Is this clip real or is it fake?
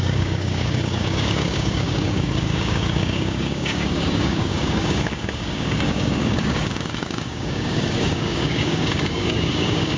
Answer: fake